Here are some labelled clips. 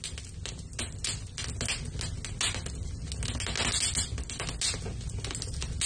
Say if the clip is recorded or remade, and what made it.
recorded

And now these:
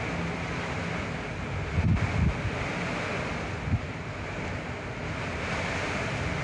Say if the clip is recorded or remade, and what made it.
recorded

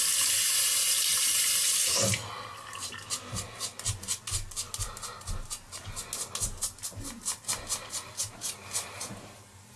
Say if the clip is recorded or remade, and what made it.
recorded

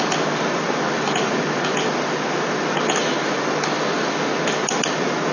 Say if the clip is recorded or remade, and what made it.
recorded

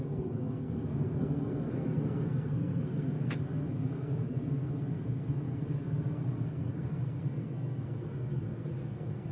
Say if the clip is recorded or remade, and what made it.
remade, codec, SNAC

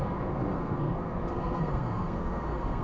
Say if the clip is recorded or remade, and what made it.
remade, codec, SNAC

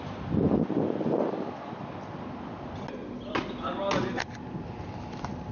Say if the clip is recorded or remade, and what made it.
recorded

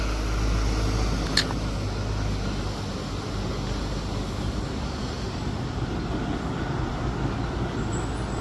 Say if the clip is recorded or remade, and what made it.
recorded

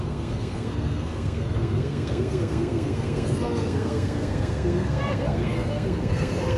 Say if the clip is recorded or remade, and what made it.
remade, codec, SNAC